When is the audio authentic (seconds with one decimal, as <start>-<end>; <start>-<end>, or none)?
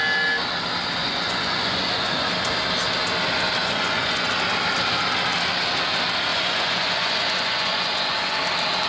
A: 0.0-1.0; 2.3-3.6; 4.3-6.3; 8.4-8.9